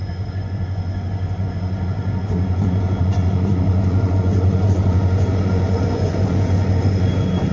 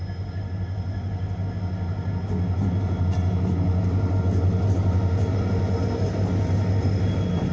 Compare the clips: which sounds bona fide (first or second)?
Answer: second